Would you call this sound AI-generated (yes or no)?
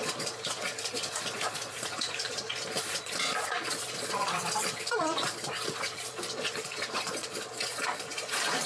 yes